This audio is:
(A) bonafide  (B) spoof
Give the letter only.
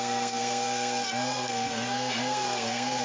B